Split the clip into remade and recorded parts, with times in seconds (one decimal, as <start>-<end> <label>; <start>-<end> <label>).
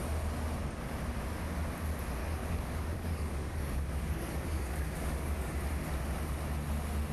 0.0-2.2 recorded; 2.2-5.5 remade; 5.5-7.1 recorded